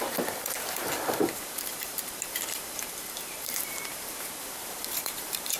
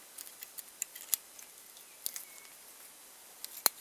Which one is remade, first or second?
first